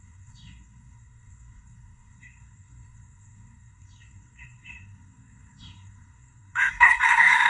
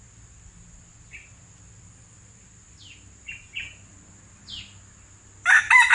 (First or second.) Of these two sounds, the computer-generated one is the first